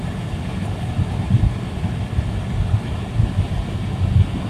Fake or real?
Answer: real